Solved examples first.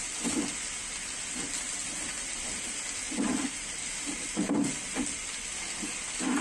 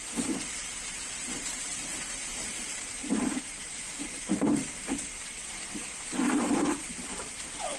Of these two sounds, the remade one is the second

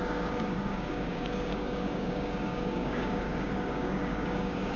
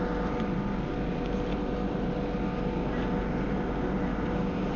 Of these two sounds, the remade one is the first